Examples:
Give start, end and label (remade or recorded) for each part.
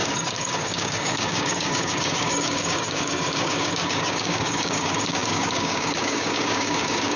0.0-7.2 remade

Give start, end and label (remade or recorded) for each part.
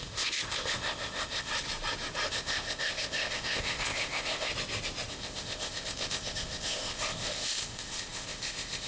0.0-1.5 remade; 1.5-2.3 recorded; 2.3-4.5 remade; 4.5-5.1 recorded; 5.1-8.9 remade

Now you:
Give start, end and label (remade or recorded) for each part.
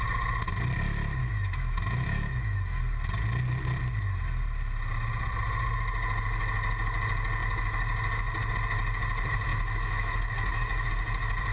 0.0-1.2 recorded; 1.2-2.8 remade; 2.8-9.5 recorded; 9.5-10.9 remade; 10.9-11.5 recorded